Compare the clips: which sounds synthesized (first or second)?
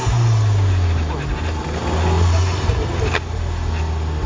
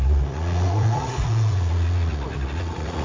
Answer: second